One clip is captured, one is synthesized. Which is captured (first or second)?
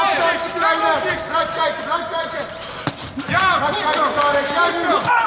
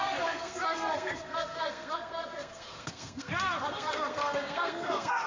first